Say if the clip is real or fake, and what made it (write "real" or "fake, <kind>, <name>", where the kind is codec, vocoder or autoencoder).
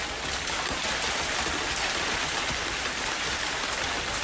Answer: real